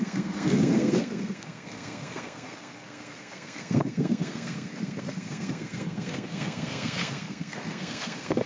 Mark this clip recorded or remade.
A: remade